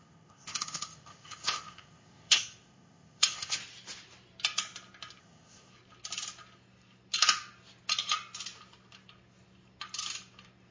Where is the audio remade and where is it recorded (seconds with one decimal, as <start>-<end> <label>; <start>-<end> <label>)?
0.0-3.6 remade; 3.6-5.2 recorded; 5.2-5.7 remade; 5.7-10.7 recorded